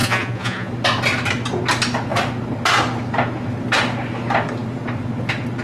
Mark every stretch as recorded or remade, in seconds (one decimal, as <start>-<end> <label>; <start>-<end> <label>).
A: 0.0-0.7 remade; 0.7-5.6 recorded

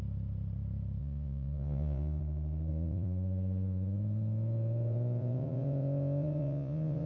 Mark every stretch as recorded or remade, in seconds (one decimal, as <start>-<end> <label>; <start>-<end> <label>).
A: 0.0-1.0 recorded; 1.0-2.2 remade; 2.2-2.7 recorded; 2.7-7.1 remade

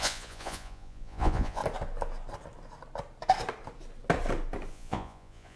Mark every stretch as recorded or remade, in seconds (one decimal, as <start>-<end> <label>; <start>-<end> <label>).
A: 0.0-1.6 remade; 1.6-4.7 recorded; 4.7-5.6 remade

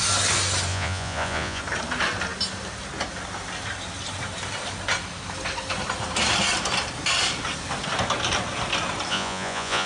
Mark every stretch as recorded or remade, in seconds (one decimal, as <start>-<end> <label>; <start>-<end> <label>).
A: 0.0-0.7 recorded; 0.7-1.6 remade; 1.6-9.1 recorded; 9.1-9.9 remade

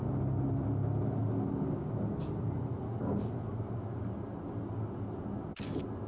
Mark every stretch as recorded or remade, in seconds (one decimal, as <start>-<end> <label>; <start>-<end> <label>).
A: 0.0-6.1 recorded